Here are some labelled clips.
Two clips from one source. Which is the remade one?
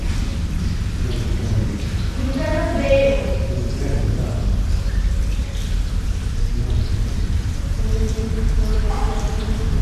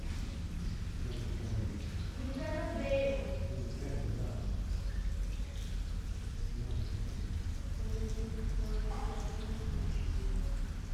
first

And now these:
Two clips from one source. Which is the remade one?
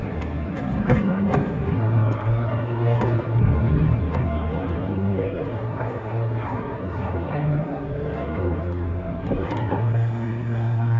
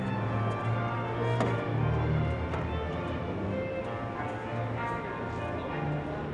first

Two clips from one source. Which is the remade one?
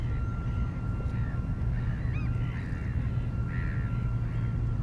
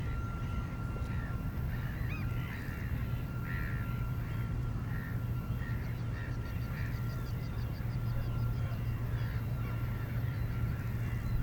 second